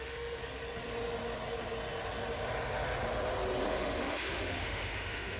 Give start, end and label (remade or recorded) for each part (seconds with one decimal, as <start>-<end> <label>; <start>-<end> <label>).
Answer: 0.0-0.4 remade; 0.4-3.6 recorded; 3.6-5.4 remade